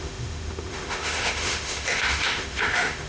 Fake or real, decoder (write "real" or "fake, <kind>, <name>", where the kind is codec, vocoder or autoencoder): fake, autoencoder, DAC-VAE